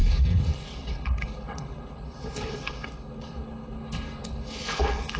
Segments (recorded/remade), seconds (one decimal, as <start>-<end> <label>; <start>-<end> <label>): 0.0-5.2 remade